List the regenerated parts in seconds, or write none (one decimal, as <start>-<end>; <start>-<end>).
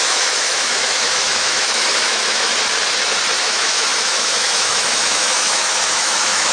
0.0-2.5; 3.4-6.5